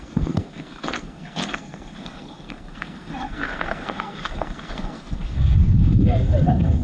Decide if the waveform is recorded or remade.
remade